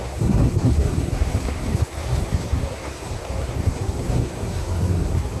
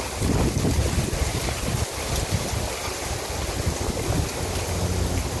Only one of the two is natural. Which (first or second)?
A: second